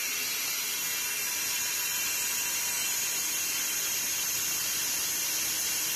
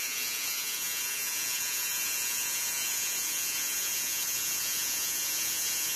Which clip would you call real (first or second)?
first